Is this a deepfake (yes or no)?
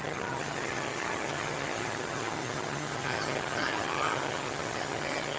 yes